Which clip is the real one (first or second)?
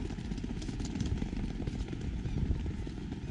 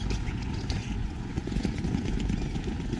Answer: first